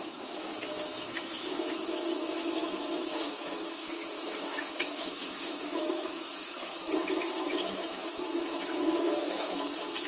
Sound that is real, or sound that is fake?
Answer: fake